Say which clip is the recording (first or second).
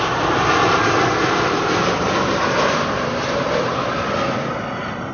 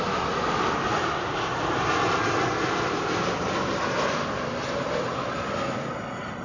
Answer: second